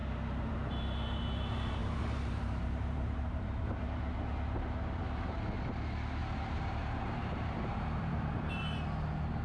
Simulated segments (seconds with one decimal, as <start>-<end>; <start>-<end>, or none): 0.0-0.5; 1.8-3.8; 6.2-8.6